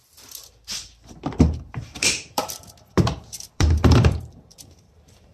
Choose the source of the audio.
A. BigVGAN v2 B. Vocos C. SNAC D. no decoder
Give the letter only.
A